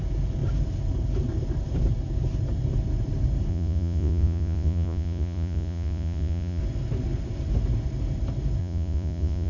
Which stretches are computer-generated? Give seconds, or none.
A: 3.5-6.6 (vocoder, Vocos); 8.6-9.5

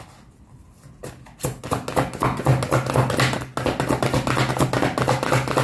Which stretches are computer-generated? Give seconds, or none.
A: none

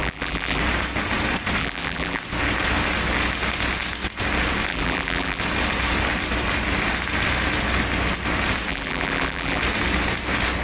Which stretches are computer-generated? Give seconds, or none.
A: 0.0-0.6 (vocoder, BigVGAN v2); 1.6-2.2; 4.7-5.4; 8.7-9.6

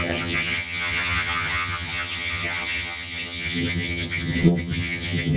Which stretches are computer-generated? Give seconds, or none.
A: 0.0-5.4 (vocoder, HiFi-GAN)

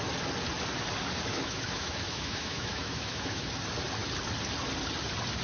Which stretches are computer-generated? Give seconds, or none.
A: 1.3-3.5 (autoencoder, DAC-VAE)

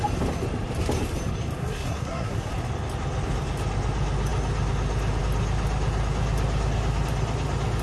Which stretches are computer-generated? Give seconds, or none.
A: 1.6-2.5 (codec, SNAC)

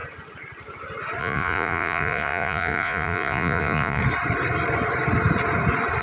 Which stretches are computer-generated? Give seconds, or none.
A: 1.2-4.0 (vocoder, Vocos)

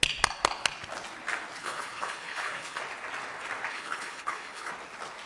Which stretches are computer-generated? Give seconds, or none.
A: 1.6-2.8 (codec, HILCodec); 3.7-4.7